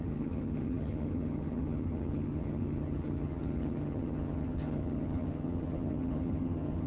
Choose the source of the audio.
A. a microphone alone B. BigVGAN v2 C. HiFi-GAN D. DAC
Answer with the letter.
C